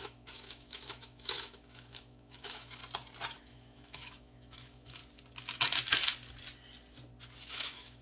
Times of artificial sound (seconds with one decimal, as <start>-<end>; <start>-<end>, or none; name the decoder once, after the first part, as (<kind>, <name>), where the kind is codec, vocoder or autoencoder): 0.0-2.8 (autoencoder, DAC-VAE); 3.4-5.0; 7.5-8.0